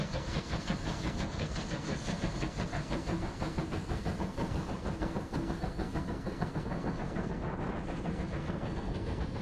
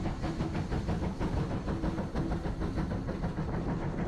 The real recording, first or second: second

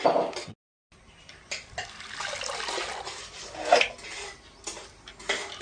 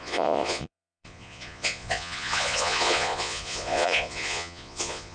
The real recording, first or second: first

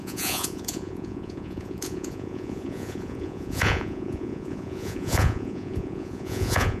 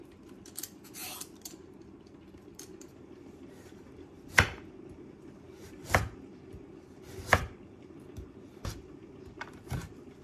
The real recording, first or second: second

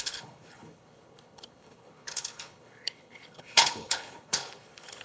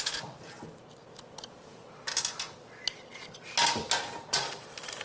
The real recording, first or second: second